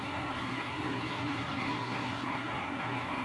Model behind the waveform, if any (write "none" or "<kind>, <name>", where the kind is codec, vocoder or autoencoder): codec, SNAC